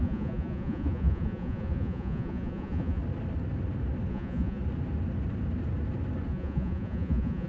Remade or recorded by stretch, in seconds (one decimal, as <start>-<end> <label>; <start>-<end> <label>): 0.0-3.0 remade; 3.0-4.1 recorded; 4.1-4.6 remade; 4.6-6.3 recorded; 6.3-7.5 remade